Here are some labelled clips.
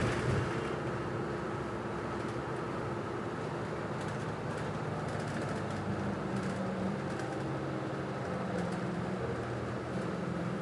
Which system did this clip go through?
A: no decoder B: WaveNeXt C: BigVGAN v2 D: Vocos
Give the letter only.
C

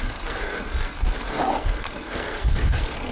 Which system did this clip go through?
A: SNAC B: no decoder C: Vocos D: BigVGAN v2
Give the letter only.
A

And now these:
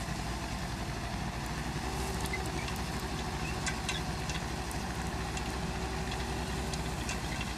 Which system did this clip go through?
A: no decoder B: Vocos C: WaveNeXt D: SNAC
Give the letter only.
A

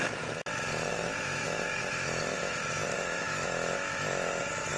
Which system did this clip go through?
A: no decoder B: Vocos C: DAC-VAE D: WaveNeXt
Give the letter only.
C